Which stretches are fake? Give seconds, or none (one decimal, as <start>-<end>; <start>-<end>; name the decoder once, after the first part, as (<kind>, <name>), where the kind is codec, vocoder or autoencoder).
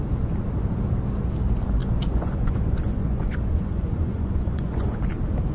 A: 1.8-5.0 (vocoder, Vocos)